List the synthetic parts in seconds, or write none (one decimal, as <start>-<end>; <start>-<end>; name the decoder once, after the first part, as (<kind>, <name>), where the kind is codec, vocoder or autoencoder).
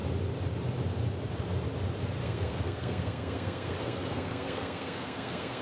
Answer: 2.2-5.6 (codec, SNAC)